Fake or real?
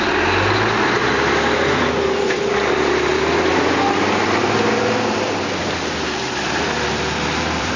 fake